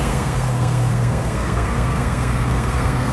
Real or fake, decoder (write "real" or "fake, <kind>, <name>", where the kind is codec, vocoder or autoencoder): fake, codec, SNAC